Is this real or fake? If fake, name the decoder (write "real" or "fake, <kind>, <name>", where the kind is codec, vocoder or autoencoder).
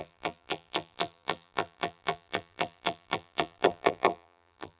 fake, vocoder, BigVGAN v2